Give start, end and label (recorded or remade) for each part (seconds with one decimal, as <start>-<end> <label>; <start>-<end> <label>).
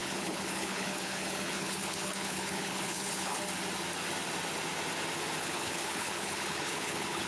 0.0-3.4 remade; 3.4-5.4 recorded; 5.4-7.3 remade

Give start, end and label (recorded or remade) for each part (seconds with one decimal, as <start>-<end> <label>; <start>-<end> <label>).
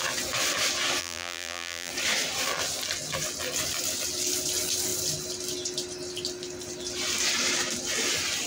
0.0-1.0 recorded; 1.0-1.9 remade; 1.9-8.5 recorded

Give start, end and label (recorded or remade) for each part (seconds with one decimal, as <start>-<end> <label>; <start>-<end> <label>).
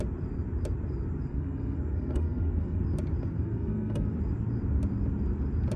0.0-1.3 recorded; 1.3-2.8 remade; 2.8-3.3 recorded; 3.3-4.2 remade; 4.2-5.8 recorded